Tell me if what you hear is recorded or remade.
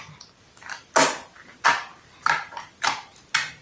recorded